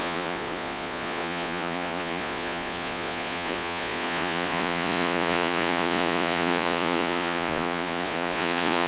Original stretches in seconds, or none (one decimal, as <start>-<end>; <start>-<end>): none